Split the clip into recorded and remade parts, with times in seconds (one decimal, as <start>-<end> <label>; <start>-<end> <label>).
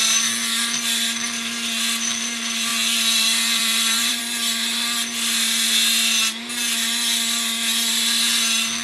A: 0.0-2.7 recorded; 2.7-4.2 remade; 4.2-8.8 recorded